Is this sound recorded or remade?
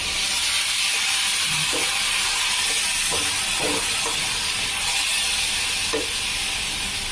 recorded